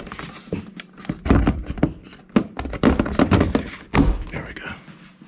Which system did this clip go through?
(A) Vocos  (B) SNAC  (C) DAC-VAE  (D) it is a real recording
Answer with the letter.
D